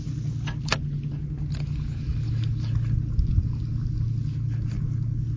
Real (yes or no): yes